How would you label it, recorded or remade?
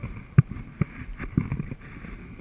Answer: recorded